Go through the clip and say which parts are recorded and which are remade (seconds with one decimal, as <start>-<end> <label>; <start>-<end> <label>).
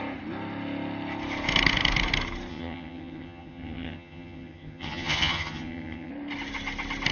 0.0-2.5 recorded; 2.5-6.1 remade; 6.1-7.1 recorded